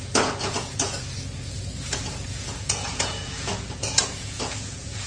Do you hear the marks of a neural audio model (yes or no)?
yes